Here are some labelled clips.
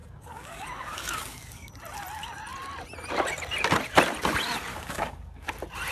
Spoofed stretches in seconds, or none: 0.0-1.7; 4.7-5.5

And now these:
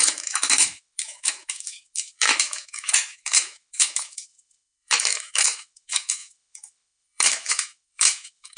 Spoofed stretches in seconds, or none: 0.0-8.6

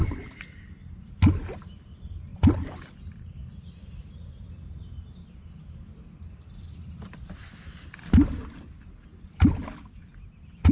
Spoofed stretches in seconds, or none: none

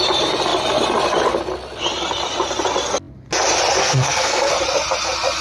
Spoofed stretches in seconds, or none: 3.8-4.5

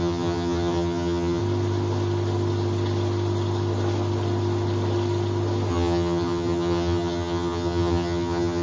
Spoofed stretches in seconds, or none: 0.0-1.4; 5.7-8.6

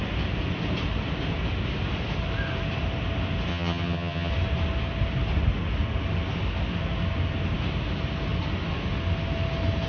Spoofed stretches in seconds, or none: 3.5-4.3

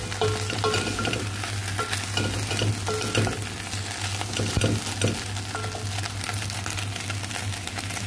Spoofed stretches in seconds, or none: none